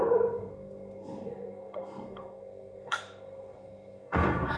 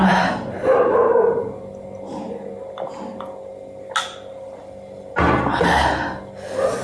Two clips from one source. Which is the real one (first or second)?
second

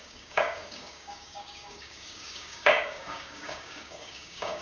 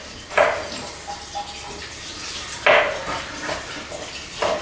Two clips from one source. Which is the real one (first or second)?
second